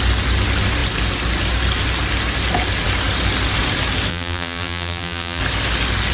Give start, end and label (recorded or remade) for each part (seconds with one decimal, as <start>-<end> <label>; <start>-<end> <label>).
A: 0.0-4.1 recorded; 4.1-5.4 remade; 5.4-6.1 recorded